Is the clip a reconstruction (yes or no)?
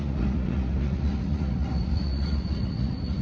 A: yes